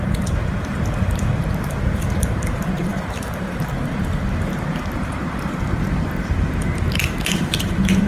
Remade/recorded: remade